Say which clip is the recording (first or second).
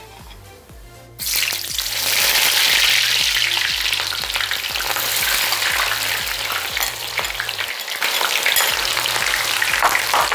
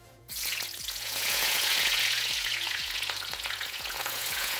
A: first